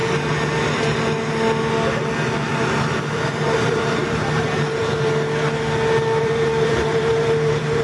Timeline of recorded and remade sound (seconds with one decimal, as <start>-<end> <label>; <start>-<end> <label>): 0.0-2.5 recorded; 2.5-4.9 remade; 4.9-6.2 recorded; 6.2-7.8 remade